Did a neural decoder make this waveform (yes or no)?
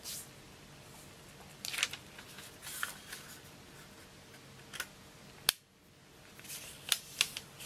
no